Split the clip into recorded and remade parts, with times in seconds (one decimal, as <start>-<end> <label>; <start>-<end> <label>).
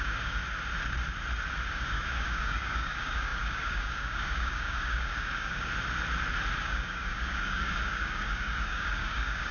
0.0-0.4 remade; 0.4-1.7 recorded; 1.7-5.7 remade; 5.7-6.6 recorded; 6.6-9.5 remade